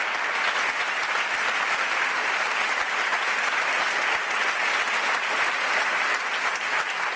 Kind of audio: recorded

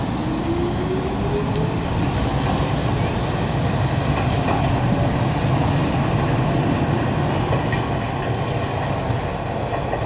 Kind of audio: recorded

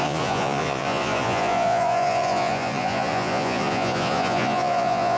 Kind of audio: remade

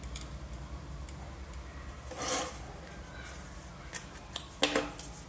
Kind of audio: recorded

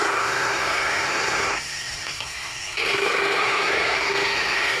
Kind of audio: remade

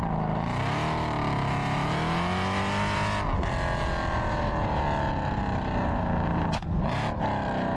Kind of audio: recorded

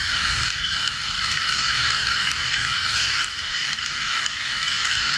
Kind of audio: remade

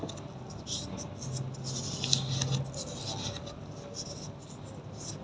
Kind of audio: recorded